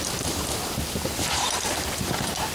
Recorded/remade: remade